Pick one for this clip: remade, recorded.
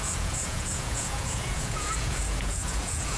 remade